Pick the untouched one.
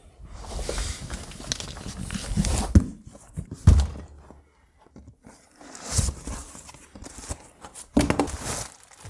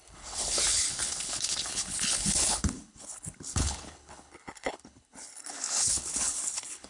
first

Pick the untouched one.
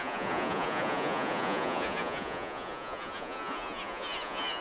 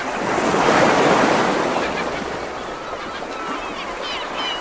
second